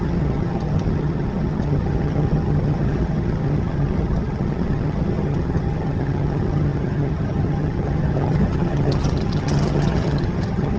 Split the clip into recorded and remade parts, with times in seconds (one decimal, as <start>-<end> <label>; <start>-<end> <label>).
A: 0.0-10.8 remade